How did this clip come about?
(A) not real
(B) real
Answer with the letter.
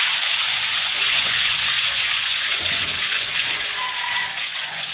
A